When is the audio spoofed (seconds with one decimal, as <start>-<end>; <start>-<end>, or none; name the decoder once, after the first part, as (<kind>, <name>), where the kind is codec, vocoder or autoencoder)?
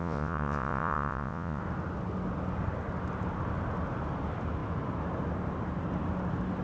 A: 0.0-1.6 (vocoder, Vocos)